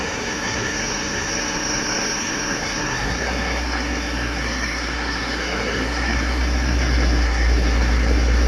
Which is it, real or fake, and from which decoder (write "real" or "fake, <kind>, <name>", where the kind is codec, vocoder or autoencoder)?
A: fake, codec, SNAC